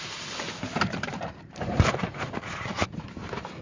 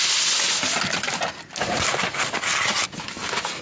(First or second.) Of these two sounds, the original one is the second